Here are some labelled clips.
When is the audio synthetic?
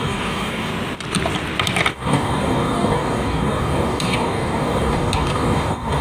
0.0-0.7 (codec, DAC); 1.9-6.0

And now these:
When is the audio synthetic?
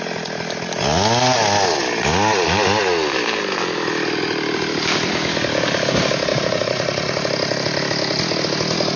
6.3-7.1 (vocoder, Vocos)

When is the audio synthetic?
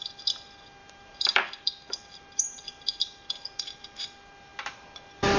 0.8-4.0 (vocoder, BigVGAN v2)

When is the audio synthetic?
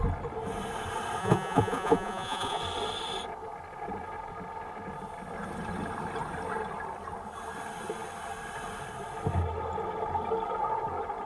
1.2-2.6 (vocoder, Vocos)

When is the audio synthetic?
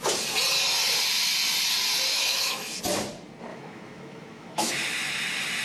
2.1-2.8 (autoencoder, DAC-VAE); 3.5-4.7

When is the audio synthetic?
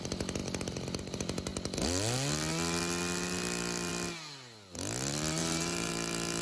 5.4-5.9 (vocoder, BigVGAN v2)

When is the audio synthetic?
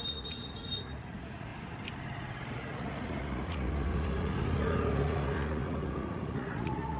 0.0-1.5 (vocoder, Vocos); 2.5-7.0